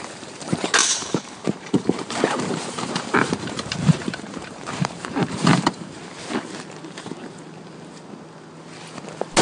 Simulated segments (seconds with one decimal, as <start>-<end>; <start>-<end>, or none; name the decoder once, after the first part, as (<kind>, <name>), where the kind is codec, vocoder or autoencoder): 0.8-6.1 (vocoder, BigVGAN v2)

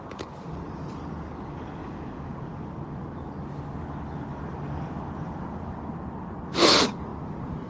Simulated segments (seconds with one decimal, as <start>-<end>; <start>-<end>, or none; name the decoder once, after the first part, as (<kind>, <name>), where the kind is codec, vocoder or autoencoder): none

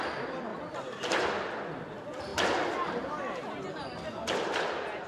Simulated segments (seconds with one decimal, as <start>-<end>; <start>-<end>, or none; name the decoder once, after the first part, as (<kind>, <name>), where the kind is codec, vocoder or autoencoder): none

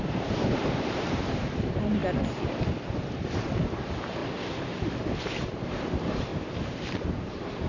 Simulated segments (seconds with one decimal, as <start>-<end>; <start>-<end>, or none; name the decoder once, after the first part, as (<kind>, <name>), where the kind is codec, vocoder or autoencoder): 0.0-2.0 (vocoder, BigVGAN v2); 3.0-4.2; 5.2-7.7

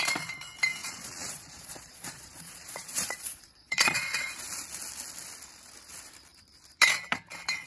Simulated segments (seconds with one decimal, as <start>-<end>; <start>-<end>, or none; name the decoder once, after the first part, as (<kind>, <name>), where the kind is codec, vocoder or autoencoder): 0.8-4.3 (vocoder, Vocos)

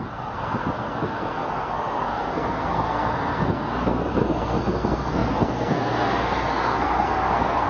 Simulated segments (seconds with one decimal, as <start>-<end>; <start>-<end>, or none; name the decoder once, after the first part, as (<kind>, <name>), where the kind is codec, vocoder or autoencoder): 0.0-7.7 (codec, SNAC)

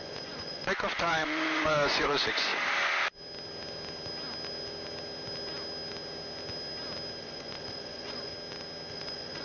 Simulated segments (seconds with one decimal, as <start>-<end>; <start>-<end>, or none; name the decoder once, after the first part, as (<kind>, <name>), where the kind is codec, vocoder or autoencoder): 0.0-2.5 (vocoder, Vocos); 7.2-8.3; 8.9-9.4

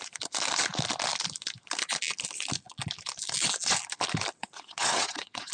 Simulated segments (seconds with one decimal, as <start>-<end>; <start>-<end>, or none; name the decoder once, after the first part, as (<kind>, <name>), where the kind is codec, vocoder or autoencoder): 4.4-5.5 (vocoder, WaveNeXt)